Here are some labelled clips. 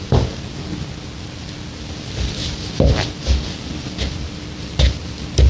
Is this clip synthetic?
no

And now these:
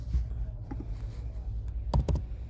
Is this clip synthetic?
no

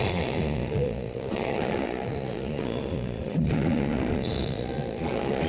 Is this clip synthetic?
yes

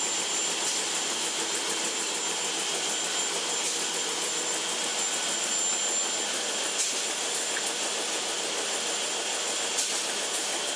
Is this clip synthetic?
no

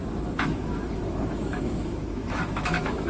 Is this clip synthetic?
yes